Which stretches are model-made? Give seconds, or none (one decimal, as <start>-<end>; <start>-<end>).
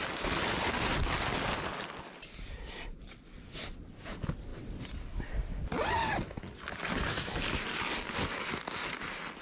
none